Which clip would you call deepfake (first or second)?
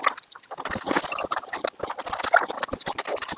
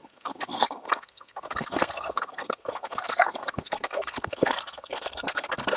second